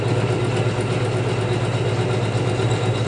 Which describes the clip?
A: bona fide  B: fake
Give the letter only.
A